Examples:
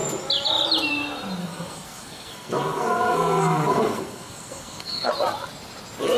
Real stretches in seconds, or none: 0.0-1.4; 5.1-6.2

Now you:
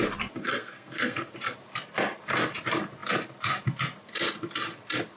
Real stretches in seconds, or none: 0.0-0.4; 1.3-5.2